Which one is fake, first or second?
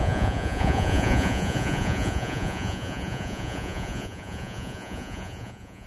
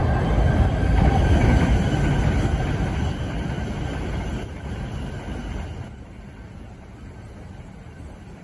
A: first